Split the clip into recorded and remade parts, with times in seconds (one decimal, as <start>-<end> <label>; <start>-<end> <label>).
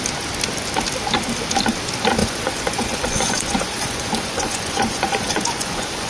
0.0-2.2 recorded; 2.2-6.1 remade